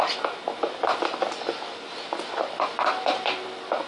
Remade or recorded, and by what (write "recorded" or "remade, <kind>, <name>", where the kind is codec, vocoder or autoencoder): recorded